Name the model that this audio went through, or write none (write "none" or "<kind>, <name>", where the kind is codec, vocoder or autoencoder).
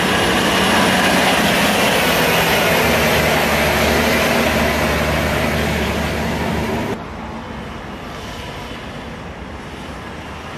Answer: none